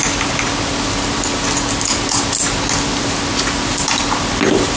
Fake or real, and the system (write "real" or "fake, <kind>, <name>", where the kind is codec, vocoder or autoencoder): real